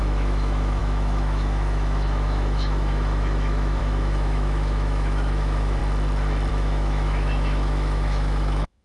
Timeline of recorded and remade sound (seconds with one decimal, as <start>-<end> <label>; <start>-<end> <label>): 0.0-5.8 remade; 5.8-6.5 recorded; 6.5-8.8 remade